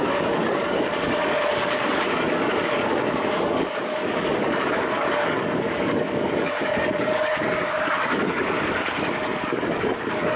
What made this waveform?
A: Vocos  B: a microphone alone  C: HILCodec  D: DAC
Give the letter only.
D